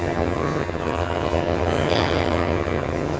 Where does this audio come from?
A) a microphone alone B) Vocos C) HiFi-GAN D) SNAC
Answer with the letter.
C